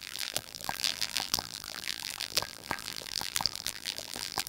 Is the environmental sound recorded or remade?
remade